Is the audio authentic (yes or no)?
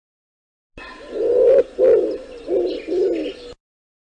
yes